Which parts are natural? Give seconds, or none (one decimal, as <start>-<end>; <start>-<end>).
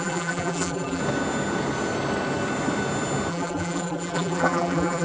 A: 1.0-3.3